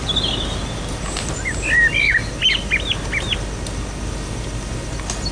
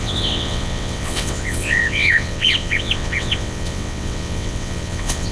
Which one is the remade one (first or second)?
second